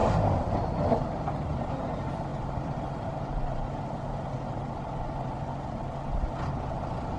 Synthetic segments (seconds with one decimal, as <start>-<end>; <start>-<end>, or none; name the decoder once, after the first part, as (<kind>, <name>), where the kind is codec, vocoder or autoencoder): 0.0-0.6 (vocoder, BigVGAN v2)